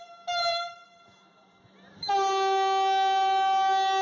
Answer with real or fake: real